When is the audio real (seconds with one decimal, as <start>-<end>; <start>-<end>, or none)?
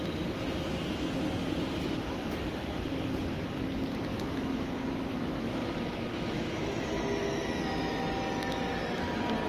0.0-4.1; 6.9-9.5